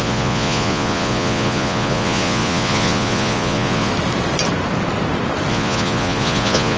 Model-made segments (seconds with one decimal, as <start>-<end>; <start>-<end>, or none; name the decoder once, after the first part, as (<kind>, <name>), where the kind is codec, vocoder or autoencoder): 0.0-3.9 (vocoder, Vocos); 5.5-6.8